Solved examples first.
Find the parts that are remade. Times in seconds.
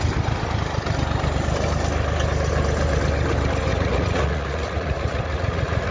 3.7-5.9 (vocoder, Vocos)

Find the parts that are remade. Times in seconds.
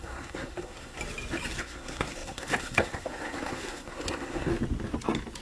0.0-1.0 (codec, SNAC); 1.6-4.5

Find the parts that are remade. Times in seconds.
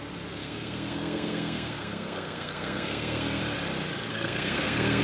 0.4-3.4 (codec, SNAC); 4.1-5.0